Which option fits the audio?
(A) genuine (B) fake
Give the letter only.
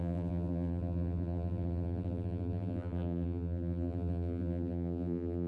B